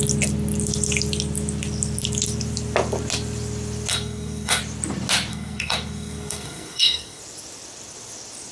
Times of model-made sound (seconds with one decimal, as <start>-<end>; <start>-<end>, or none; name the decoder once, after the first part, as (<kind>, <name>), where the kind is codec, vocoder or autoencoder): 3.9-4.6 (codec, SNAC); 5.3-7.2